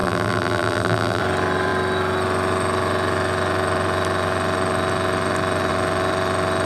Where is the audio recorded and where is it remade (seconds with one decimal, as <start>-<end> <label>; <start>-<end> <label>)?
0.0-1.2 remade; 1.2-6.7 recorded